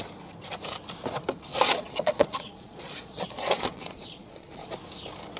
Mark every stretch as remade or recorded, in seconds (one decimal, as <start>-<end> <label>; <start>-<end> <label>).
0.0-1.5 recorded; 1.5-4.7 remade; 4.7-5.4 recorded